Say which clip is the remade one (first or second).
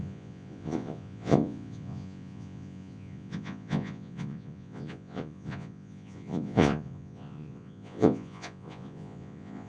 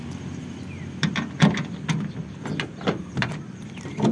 first